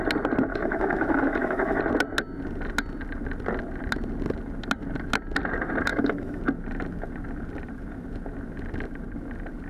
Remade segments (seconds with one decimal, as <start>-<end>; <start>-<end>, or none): 0.5-1.8; 5.9-6.4